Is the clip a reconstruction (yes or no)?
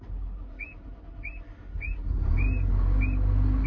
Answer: no